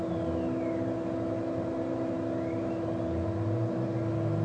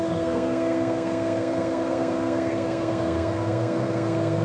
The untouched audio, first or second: first